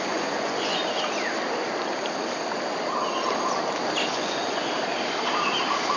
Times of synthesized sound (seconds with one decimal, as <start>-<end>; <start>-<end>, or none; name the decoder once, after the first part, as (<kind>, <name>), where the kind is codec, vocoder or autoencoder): 0.0-0.8 (vocoder, Vocos); 4.1-4.6